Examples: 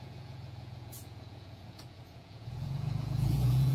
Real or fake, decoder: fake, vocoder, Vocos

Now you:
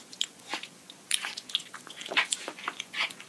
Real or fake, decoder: fake, vocoder, Vocos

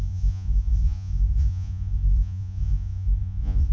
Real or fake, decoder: fake, vocoder, Vocos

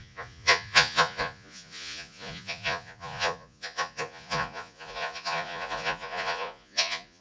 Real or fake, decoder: fake, vocoder, Vocos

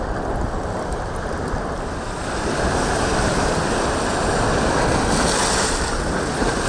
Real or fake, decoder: real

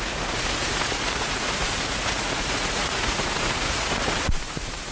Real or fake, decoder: fake, vocoder, Vocos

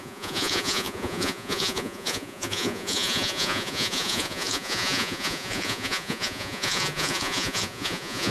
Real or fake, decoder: fake, vocoder, Vocos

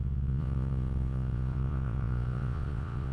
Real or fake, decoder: fake, vocoder, Vocos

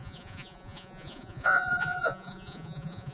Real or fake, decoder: fake, vocoder, Vocos